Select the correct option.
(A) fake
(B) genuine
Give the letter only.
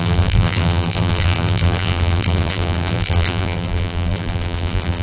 A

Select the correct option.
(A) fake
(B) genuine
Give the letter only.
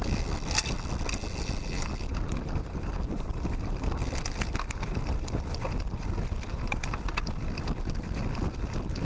B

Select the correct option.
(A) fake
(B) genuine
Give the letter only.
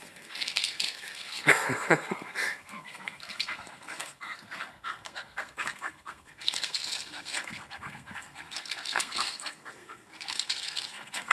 A